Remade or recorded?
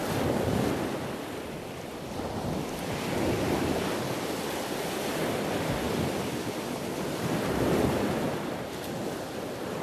recorded